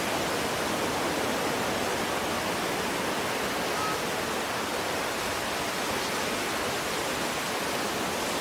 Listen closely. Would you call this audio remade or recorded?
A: recorded